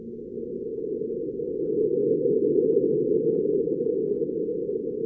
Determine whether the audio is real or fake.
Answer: real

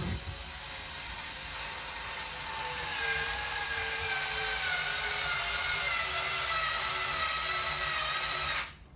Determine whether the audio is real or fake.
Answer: real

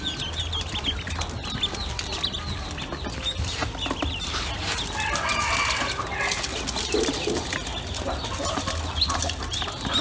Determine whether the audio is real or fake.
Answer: real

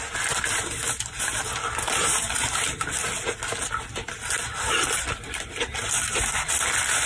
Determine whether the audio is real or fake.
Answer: fake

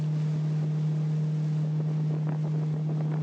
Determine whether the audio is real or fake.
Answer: real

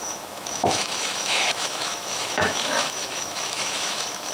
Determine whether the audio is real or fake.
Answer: fake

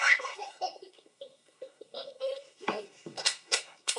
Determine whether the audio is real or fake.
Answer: fake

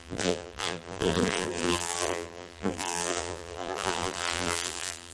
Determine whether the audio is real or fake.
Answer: fake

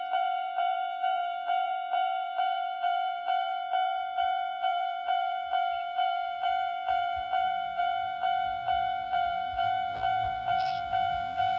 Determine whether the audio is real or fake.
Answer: fake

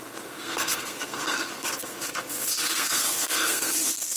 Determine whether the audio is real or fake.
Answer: fake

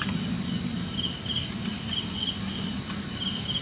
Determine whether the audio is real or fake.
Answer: real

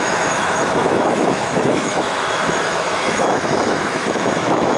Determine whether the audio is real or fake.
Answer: fake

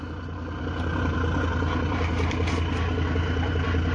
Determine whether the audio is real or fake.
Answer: real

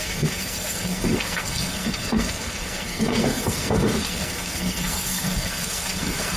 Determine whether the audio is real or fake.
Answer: fake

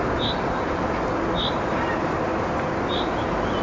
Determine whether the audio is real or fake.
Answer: real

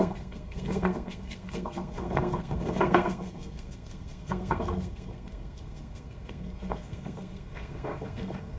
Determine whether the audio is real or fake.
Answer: fake